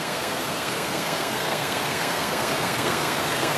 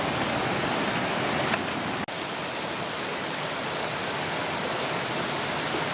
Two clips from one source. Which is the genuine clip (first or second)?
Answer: second